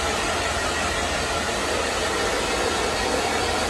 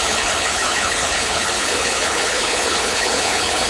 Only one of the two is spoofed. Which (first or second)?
second